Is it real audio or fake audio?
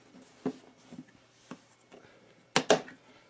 real